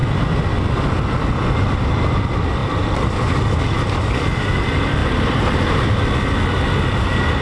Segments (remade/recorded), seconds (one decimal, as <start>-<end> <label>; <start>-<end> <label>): 0.0-5.0 recorded; 5.0-5.7 remade; 5.7-7.4 recorded